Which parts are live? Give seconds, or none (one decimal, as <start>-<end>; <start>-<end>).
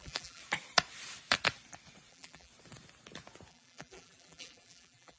0.4-2.1; 2.5-3.5